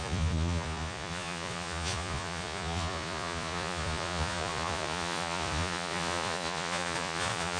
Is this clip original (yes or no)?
no